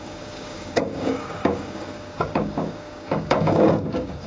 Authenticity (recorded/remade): remade